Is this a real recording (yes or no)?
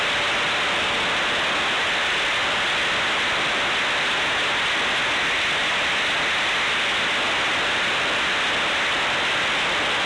yes